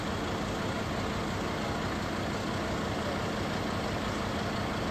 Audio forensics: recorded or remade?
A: recorded